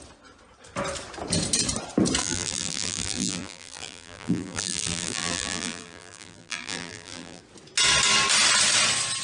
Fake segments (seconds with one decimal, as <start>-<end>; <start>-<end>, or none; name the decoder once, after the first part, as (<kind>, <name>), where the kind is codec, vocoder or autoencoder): 2.2-7.4 (vocoder, BigVGAN v2)